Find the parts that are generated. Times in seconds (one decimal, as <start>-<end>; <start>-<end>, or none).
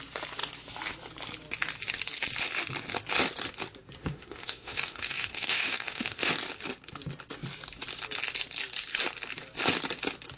4.0-6.3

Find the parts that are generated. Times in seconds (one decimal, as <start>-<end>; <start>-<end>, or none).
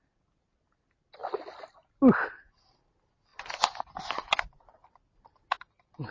none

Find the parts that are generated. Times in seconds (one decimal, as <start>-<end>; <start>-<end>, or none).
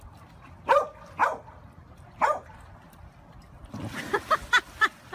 none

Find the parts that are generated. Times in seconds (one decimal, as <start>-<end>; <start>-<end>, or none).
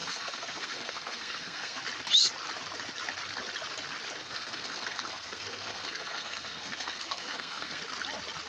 0.0-1.8; 4.2-7.8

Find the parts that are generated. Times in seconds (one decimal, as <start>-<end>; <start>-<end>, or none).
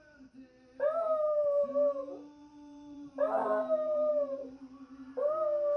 2.4-4.1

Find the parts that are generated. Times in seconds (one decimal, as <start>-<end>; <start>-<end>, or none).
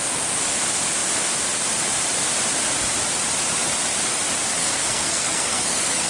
4.6-6.1